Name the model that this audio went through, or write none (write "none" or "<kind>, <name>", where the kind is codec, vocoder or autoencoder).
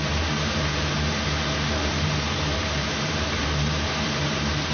vocoder, BigVGAN v2